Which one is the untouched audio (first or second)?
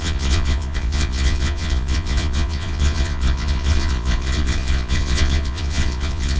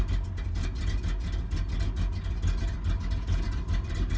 second